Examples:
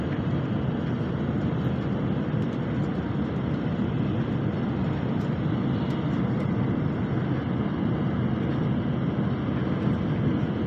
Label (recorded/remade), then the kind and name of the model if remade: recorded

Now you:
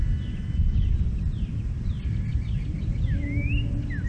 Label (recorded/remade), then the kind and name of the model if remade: recorded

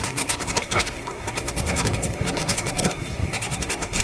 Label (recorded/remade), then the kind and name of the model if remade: remade, codec, SNAC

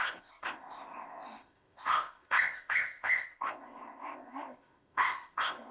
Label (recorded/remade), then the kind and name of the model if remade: remade, codec, ZipCodec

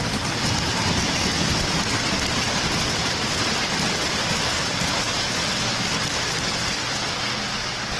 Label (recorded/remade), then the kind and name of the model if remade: recorded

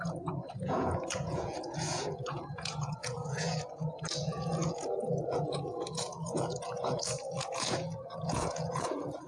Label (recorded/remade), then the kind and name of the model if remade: remade, vocoder, Vocos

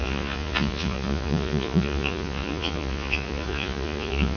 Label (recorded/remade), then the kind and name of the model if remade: remade, vocoder, Vocos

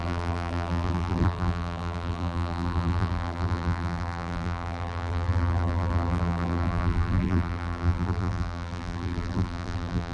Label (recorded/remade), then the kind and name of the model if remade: remade, vocoder, BigVGAN v2